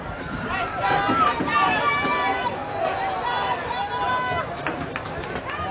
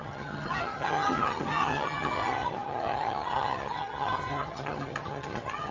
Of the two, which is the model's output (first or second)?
second